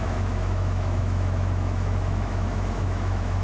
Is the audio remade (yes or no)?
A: yes